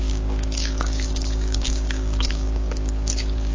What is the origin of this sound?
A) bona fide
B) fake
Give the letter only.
B